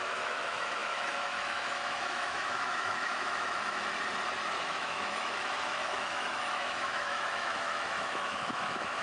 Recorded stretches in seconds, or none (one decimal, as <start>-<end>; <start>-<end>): 3.8-4.6